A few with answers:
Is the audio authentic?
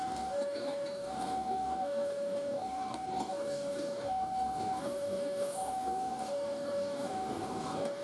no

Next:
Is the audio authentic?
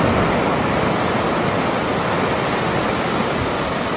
yes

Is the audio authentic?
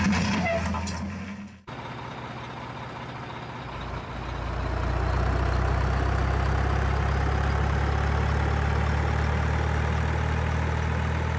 yes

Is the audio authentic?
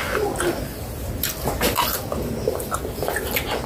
yes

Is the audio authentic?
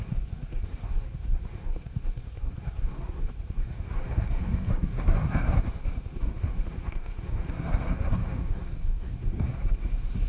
no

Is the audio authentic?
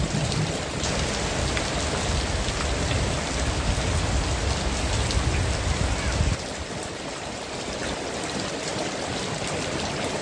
yes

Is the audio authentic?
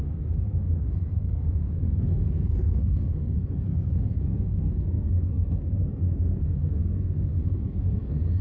no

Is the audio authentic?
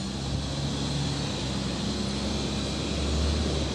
yes